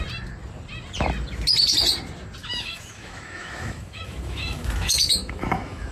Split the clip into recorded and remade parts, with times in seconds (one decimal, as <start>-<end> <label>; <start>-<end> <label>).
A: 0.0-2.4 recorded; 2.4-5.9 remade